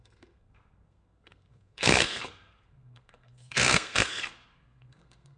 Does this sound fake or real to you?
fake